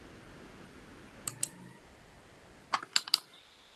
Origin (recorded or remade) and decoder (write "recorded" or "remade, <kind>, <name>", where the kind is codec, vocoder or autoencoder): recorded